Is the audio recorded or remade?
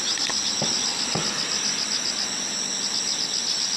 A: recorded